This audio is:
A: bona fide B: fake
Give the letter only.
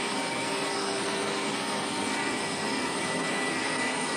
B